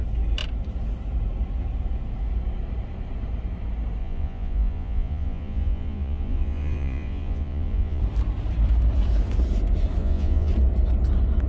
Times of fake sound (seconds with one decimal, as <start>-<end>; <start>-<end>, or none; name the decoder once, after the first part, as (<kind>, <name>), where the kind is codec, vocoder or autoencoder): 4.0-8.0 (vocoder, Vocos); 10.0-10.5